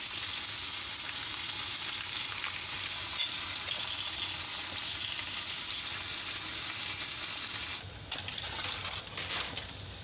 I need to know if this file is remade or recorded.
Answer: recorded